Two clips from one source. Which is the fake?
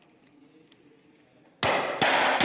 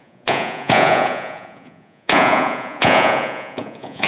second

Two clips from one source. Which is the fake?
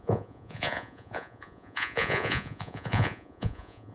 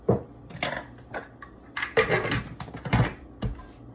first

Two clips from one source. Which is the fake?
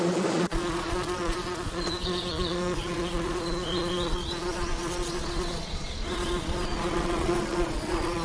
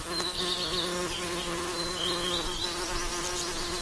first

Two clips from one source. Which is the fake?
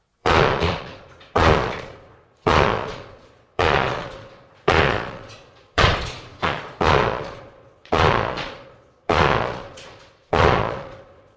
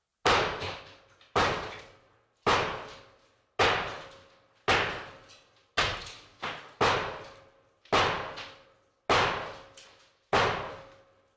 first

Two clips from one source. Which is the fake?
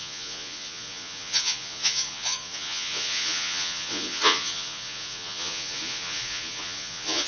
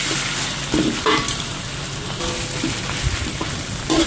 first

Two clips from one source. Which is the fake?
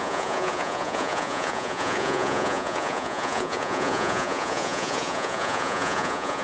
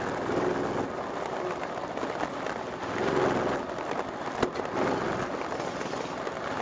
first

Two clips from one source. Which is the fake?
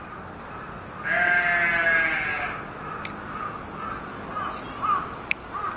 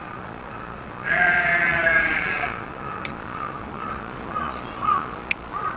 second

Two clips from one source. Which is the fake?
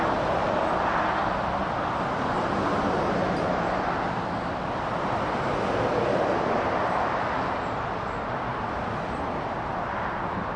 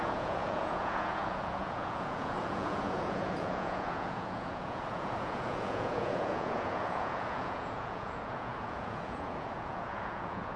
second